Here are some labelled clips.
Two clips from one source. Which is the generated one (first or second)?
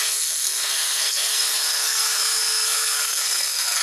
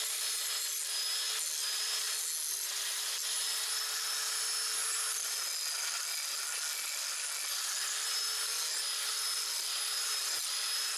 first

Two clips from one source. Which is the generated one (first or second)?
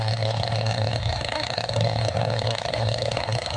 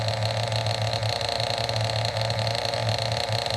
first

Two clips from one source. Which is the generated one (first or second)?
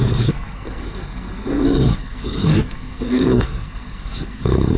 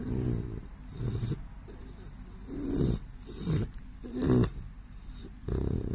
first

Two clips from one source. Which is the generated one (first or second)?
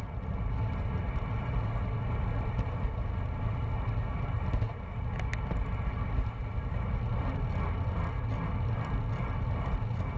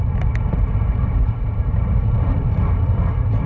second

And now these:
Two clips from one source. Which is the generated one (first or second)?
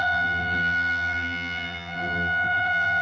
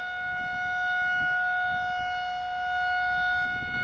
first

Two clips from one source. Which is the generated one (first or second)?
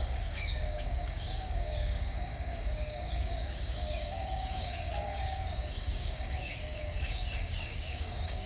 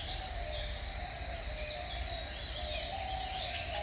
first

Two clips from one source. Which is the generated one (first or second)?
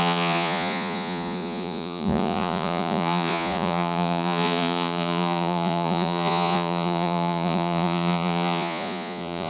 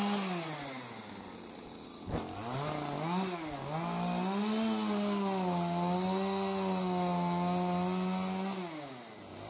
first